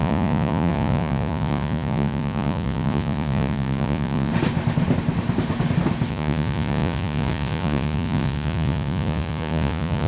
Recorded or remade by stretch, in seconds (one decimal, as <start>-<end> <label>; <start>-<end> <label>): 0.0-4.3 remade; 4.3-6.1 recorded; 6.1-10.1 remade